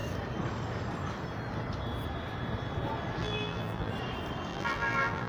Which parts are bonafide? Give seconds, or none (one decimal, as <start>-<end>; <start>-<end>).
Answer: 0.0-3.2; 3.9-4.5